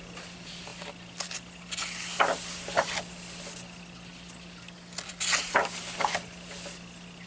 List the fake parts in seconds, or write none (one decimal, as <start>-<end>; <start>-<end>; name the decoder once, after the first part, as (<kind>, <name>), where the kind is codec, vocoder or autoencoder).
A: none